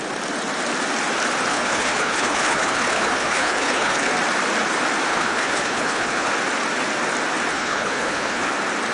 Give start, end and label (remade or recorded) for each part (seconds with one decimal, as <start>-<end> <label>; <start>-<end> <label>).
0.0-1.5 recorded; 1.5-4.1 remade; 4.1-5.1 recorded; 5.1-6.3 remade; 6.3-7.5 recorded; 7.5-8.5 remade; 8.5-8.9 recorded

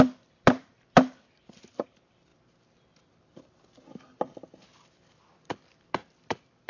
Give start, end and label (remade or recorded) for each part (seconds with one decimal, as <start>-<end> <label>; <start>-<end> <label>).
0.0-2.3 remade; 2.3-6.3 recorded; 6.3-6.7 remade

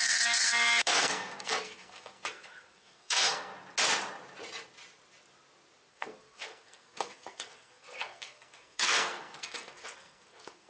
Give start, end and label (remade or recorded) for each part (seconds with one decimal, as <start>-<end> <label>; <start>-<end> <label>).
0.0-3.5 remade; 3.5-5.9 recorded; 5.9-10.7 remade